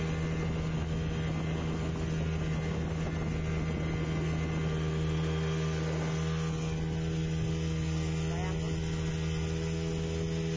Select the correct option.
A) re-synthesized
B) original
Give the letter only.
B